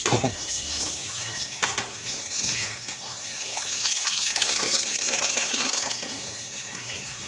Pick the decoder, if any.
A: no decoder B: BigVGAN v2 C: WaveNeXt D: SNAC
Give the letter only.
D